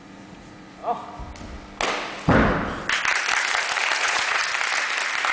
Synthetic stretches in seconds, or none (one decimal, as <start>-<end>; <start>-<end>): 0.0-0.8; 4.0-4.4